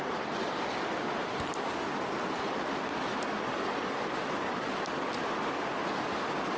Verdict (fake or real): real